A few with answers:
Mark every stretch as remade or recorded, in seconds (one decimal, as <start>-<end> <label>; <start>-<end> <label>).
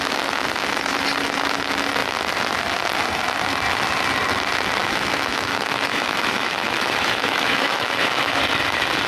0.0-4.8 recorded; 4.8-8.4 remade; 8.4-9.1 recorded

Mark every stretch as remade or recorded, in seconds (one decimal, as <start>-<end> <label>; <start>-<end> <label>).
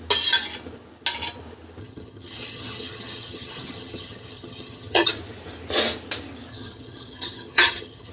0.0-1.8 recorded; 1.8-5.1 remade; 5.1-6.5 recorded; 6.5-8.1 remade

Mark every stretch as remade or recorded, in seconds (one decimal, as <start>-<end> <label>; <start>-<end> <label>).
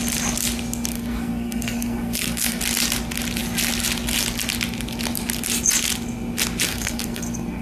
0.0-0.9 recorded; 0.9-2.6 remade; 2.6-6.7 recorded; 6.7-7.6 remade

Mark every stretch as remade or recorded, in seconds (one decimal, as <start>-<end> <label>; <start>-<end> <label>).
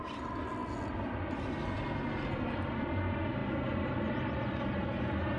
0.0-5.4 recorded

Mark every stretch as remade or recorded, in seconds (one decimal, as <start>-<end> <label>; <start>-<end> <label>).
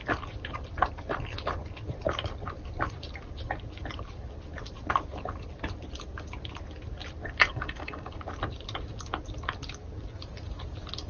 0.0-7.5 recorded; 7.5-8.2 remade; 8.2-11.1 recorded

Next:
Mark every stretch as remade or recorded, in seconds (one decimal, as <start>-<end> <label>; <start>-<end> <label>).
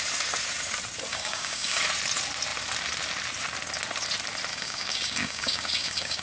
0.0-1.1 recorded; 1.1-1.8 remade; 1.8-4.5 recorded; 4.5-6.2 remade